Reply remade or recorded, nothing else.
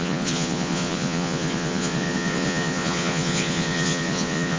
remade